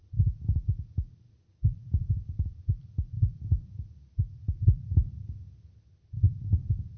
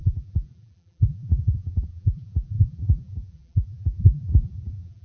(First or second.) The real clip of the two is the first